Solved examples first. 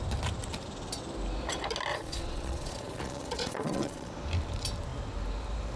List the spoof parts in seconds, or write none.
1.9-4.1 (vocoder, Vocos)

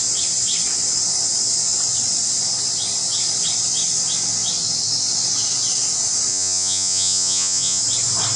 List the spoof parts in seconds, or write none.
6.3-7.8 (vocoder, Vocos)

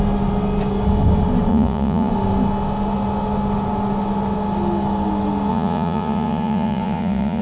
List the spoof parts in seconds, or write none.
1.5-2.1 (vocoder, Vocos); 5.5-7.4

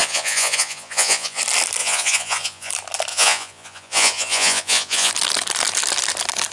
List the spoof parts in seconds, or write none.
0.0-1.4 (vocoder, Vocos); 1.8-2.7; 3.1-5.1

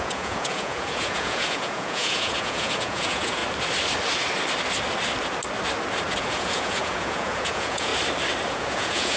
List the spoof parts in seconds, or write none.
0.0-3.4 (vocoder, Vocos); 6.2-7.9; 8.5-9.2

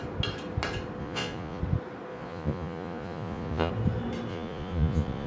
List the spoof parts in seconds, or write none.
1.0-1.6 (vocoder, Vocos); 2.1-3.7; 4.3-5.3

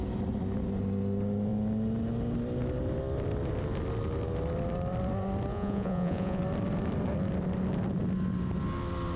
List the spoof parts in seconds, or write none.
5.5-6.4 (vocoder, Vocos)